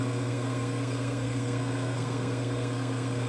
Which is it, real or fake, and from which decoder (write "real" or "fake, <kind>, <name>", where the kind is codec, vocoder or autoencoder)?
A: fake, codec, SNAC